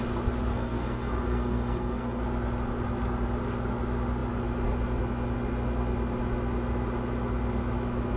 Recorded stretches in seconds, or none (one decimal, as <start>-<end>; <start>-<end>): 0.0-0.5; 2.2-8.2